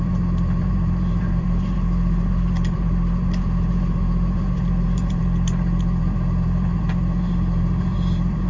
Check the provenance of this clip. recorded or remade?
remade